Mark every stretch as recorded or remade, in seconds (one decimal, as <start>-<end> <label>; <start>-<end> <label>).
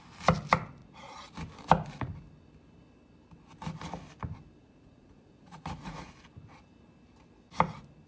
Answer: 0.0-0.8 recorded; 0.8-1.3 remade; 1.3-4.6 recorded; 4.6-6.1 remade; 6.1-8.1 recorded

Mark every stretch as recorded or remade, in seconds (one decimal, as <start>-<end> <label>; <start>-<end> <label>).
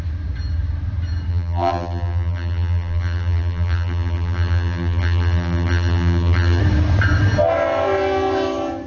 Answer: 0.0-1.3 recorded; 1.3-6.6 remade; 6.6-8.9 recorded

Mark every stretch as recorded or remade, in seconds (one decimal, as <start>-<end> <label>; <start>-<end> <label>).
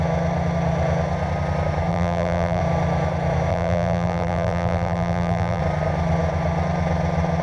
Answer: 0.0-1.9 recorded; 1.9-2.6 remade; 2.6-3.5 recorded; 3.5-5.6 remade; 5.6-7.4 recorded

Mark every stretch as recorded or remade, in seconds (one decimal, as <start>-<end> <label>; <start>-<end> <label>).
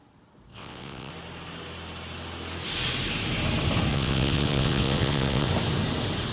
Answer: 0.0-0.5 recorded; 0.5-1.1 remade; 1.1-3.9 recorded; 3.9-5.5 remade; 5.5-6.3 recorded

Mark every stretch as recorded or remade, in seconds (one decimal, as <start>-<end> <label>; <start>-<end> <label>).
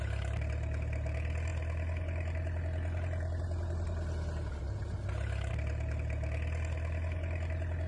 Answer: 0.0-7.9 recorded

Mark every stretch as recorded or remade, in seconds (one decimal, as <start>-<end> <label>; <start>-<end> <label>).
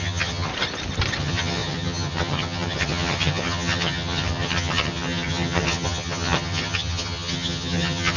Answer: 0.0-0.5 remade; 0.5-1.2 recorded; 1.2-8.2 remade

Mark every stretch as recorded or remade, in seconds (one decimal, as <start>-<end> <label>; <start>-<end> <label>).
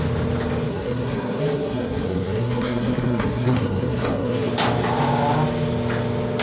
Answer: 0.0-0.7 recorded; 0.7-4.5 remade; 4.5-6.4 recorded